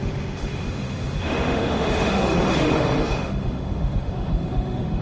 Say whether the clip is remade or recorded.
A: remade